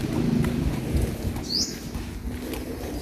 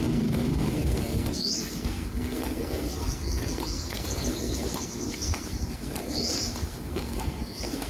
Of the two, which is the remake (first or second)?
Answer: second